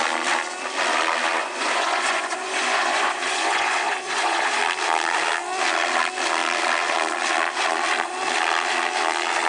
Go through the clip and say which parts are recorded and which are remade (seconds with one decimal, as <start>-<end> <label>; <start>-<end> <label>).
0.0-1.4 recorded; 1.4-4.6 remade; 4.6-9.5 recorded